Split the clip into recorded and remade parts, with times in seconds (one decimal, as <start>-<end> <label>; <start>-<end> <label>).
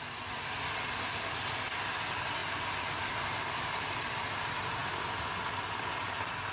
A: 0.0-6.5 recorded